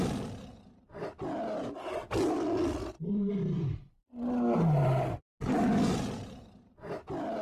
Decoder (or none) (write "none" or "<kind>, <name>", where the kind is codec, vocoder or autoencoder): none